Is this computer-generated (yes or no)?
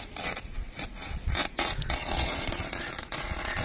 yes